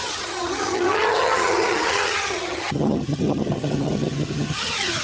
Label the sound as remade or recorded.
remade